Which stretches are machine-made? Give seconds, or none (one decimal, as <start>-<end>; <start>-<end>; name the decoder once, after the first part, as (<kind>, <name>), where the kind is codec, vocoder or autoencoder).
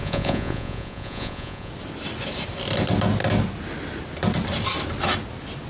0.0-1.7 (vocoder, Vocos)